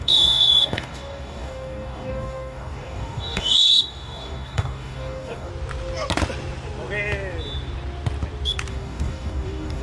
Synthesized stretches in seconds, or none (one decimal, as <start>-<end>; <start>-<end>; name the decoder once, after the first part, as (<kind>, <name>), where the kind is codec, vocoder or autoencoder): 0.0-5.5 (codec, DAC); 8.7-9.8